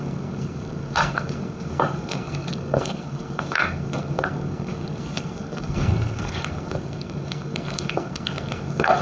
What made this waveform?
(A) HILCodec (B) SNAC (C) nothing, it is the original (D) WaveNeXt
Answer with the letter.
B